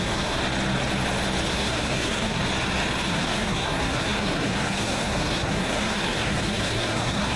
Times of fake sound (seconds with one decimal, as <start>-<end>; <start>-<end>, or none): 0.0-0.4; 1.5-2.4; 3.1-7.4